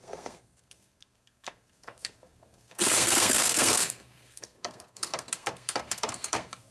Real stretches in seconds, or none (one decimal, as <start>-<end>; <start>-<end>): none

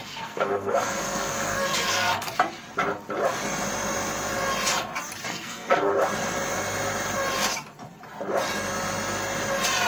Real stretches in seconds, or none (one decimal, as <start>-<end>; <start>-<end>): 2.3-5.3; 5.9-9.9

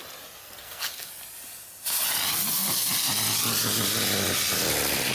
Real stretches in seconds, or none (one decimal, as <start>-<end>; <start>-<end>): 0.0-0.4; 1.1-5.1

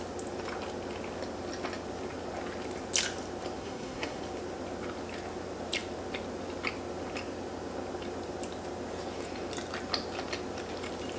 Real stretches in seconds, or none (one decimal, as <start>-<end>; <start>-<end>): 0.0-3.6; 4.2-11.2

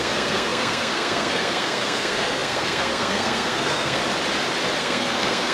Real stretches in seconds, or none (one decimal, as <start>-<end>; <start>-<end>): 4.0-4.8

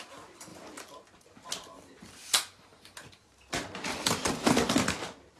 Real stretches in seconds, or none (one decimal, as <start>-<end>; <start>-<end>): 0.0-5.4

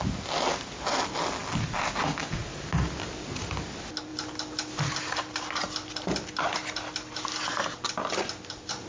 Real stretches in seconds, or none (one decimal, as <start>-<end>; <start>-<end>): 0.0-8.9

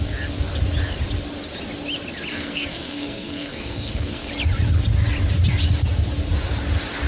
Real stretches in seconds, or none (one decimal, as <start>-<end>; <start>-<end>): 0.0-2.3; 4.3-7.1